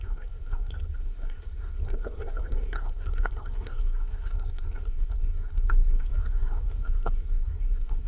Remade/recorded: remade